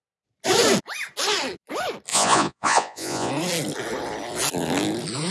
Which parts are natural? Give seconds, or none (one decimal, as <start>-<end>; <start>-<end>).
0.0-2.1; 3.3-5.3